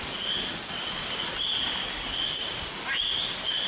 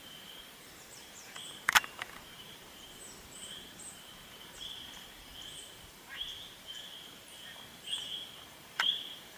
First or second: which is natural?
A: first